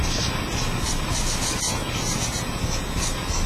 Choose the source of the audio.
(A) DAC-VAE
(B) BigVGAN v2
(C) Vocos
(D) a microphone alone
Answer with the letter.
D